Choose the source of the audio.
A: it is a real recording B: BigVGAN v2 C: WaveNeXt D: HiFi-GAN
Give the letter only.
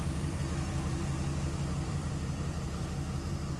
B